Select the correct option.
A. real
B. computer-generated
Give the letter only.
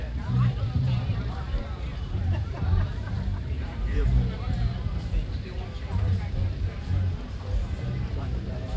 B